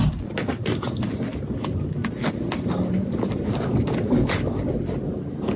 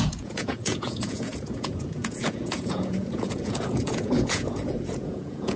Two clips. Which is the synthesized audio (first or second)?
second